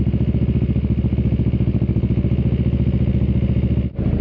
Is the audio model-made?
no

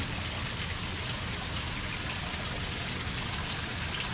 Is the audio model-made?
no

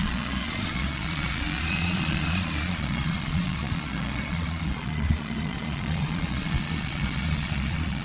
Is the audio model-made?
yes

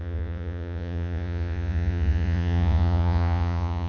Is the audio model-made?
yes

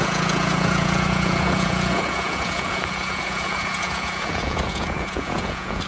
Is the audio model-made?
yes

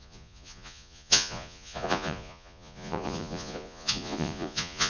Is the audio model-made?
yes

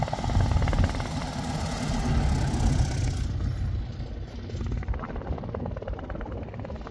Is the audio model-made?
no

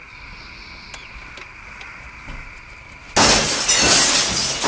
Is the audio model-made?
no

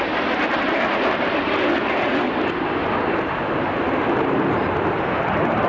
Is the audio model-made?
no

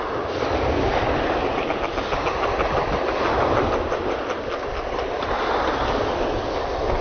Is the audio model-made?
no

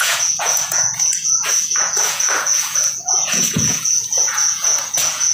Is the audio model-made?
yes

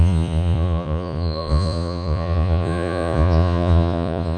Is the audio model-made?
yes